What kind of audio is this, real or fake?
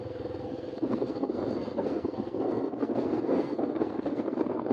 fake